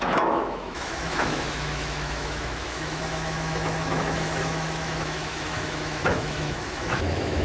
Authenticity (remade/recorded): remade